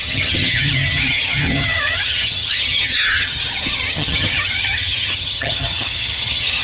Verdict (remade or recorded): remade